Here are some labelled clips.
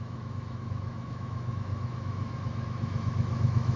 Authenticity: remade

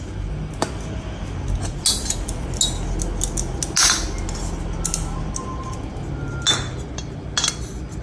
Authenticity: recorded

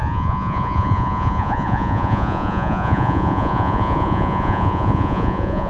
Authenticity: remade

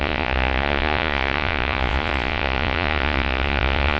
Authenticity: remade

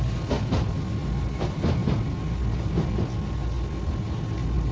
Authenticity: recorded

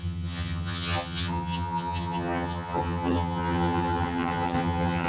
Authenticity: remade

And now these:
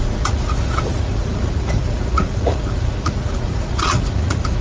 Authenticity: remade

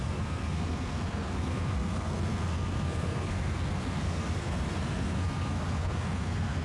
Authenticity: remade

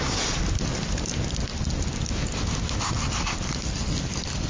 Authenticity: recorded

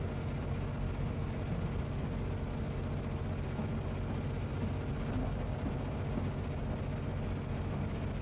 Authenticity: recorded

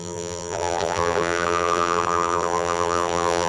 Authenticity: remade